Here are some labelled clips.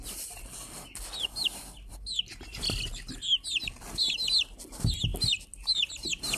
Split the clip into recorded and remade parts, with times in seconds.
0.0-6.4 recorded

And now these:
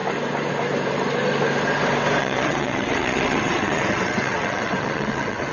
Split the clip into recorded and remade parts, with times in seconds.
0.0-2.2 recorded; 2.2-5.5 remade

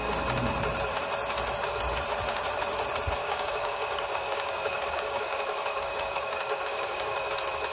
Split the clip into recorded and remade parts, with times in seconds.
0.0-3.2 recorded; 3.2-7.3 remade; 7.3-7.7 recorded

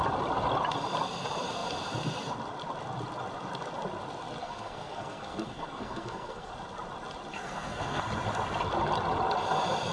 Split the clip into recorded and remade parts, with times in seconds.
0.0-4.4 recorded; 4.4-6.5 remade; 6.5-7.3 recorded; 7.3-8.0 remade; 8.0-9.9 recorded